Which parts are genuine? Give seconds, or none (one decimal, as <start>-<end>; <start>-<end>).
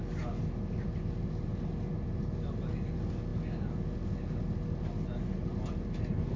0.0-6.4